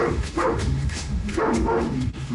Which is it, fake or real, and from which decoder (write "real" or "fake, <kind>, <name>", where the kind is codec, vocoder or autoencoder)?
fake, autoencoder, DAC-VAE